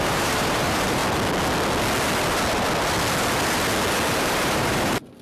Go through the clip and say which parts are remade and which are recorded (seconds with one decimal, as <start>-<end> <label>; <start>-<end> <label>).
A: 0.0-1.0 remade; 1.0-4.1 recorded; 4.1-5.2 remade